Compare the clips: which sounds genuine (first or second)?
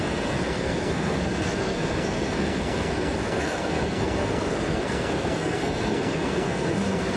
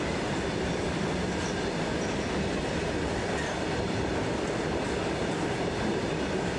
second